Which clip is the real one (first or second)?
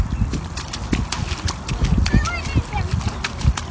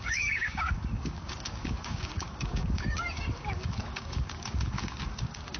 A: first